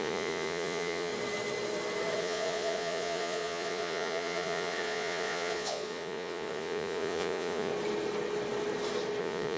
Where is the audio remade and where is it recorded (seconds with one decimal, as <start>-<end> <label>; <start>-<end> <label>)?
0.0-1.1 remade; 1.1-2.2 recorded; 2.2-7.7 remade; 7.7-9.2 recorded; 9.2-9.6 remade